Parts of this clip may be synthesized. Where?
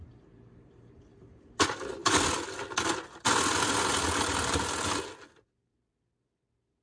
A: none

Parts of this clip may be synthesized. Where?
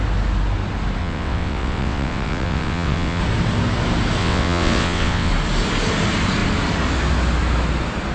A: 1.0-3.2 (vocoder, WaveNeXt); 4.2-5.3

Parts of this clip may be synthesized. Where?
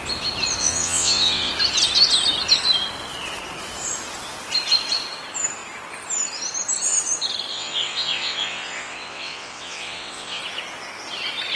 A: 0.6-1.5 (vocoder, WaveNeXt); 7.5-10.4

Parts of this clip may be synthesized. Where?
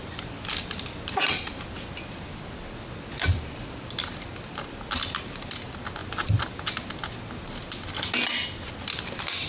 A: none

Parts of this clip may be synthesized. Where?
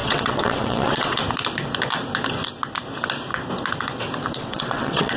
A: 0.0-1.2 (vocoder, WaveNeXt); 4.3-5.2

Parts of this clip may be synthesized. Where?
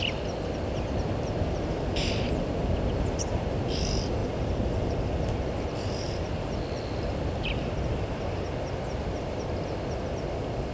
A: none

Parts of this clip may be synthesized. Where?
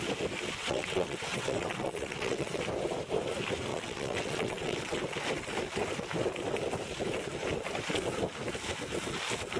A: 0.6-2.6 (vocoder, WaveNeXt); 3.7-5.0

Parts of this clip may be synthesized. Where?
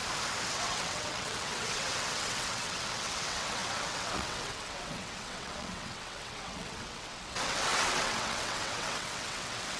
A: 0.5-9.8 (vocoder, WaveNeXt)